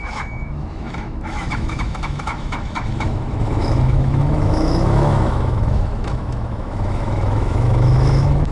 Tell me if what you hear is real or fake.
fake